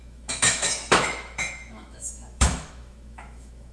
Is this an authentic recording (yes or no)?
no